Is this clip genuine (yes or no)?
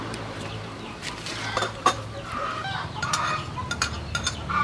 no